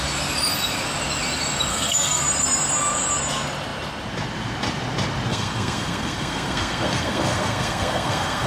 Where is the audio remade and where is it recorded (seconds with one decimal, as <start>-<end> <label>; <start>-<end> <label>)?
0.0-1.7 recorded; 1.7-2.2 remade; 2.2-5.3 recorded; 5.3-8.5 remade